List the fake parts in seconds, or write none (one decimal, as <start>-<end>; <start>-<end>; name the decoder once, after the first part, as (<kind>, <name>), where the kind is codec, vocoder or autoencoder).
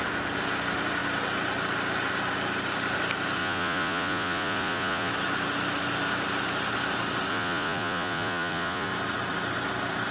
3.4-5.1 (vocoder, Vocos); 7.3-8.9